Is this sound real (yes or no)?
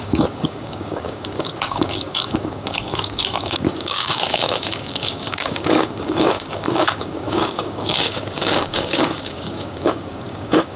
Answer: no